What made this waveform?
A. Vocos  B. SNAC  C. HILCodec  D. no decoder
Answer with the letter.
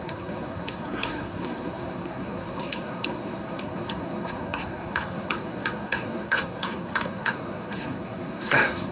B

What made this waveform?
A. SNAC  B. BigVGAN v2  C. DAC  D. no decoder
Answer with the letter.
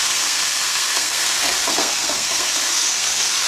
A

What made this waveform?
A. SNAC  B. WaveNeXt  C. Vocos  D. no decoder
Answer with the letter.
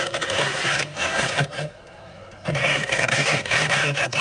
A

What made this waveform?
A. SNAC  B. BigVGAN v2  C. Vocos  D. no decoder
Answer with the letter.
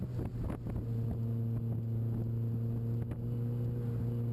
D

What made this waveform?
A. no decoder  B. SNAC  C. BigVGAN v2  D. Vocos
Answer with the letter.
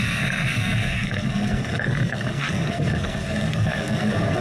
B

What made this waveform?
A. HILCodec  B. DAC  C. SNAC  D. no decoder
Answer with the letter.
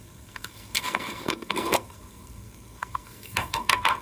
C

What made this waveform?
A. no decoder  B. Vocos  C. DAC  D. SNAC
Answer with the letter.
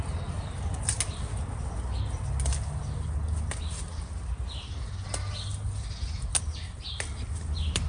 A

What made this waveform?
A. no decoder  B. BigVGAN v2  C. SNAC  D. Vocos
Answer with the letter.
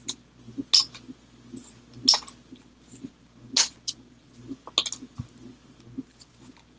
A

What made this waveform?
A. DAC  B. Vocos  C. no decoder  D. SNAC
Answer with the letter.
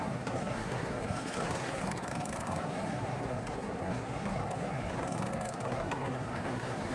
D